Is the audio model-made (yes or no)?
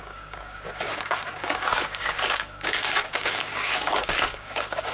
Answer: yes